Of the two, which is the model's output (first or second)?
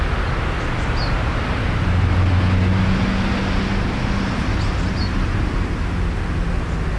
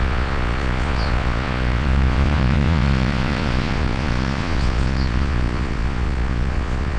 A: second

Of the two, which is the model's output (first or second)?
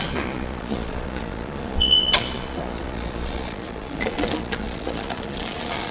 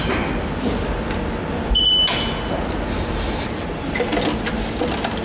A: first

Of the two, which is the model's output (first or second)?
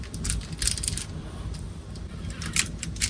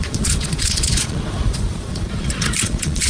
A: second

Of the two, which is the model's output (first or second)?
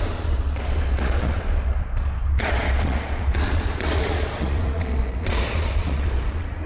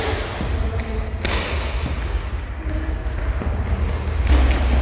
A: first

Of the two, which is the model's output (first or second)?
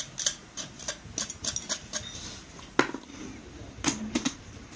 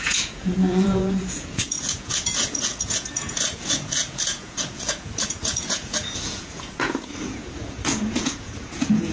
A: second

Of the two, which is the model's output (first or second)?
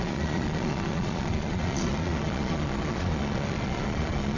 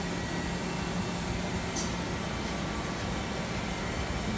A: first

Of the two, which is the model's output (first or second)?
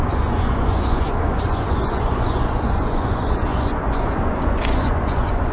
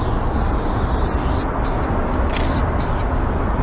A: first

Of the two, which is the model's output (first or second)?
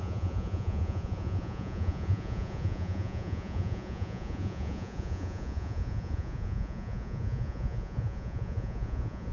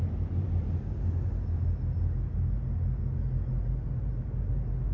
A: first